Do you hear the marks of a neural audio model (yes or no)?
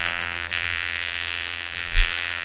yes